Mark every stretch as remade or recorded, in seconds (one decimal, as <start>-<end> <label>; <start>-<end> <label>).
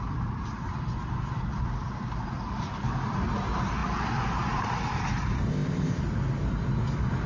0.0-5.5 recorded; 5.5-6.0 remade; 6.0-7.3 recorded